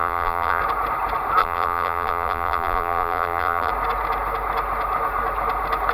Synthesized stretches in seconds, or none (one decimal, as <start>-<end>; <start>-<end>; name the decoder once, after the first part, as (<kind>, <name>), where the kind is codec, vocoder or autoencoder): 0.0-0.6 (vocoder, BigVGAN v2); 1.4-3.7